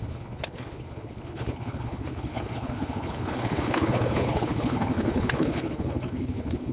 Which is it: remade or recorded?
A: remade